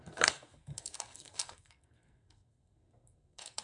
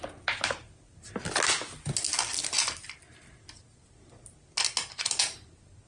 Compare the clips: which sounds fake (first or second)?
first